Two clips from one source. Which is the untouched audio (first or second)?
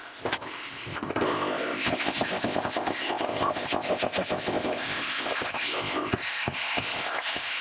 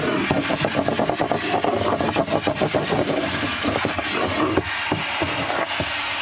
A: second